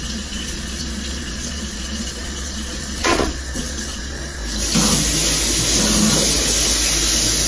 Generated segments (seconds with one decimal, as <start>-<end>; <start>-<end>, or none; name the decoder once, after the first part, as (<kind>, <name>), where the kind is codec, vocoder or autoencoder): 0.0-4.4 (vocoder, Vocos)